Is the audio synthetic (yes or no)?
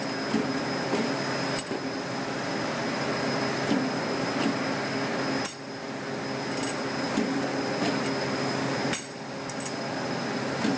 no